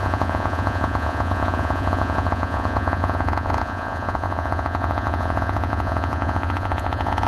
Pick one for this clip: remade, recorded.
remade